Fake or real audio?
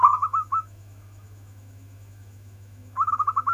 fake